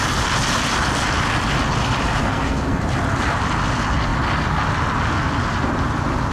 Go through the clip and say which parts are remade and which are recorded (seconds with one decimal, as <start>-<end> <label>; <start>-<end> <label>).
0.0-2.2 recorded; 2.2-2.8 remade; 2.8-6.3 recorded